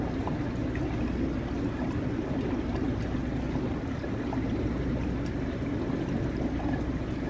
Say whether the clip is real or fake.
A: real